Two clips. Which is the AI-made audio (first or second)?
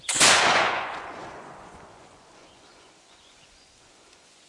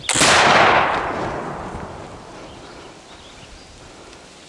first